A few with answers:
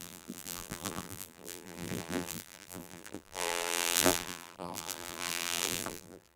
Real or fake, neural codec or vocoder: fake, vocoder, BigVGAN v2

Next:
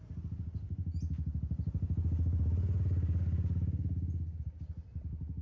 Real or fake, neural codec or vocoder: real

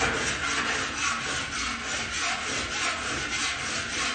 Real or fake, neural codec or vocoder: real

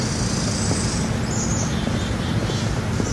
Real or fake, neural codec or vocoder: real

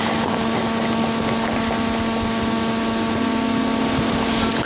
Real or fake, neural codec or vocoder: real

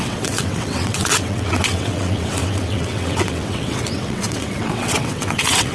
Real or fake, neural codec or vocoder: fake, vocoder, WaveNeXt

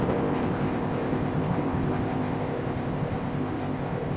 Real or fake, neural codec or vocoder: fake, codec, ZipCodec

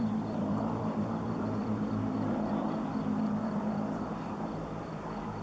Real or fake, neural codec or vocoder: fake, vocoder, BigVGAN v2